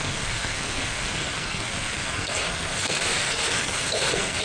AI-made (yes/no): yes